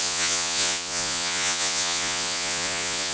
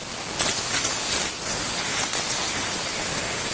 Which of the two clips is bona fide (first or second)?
second